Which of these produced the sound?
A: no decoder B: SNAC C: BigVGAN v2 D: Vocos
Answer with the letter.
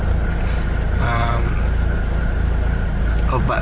A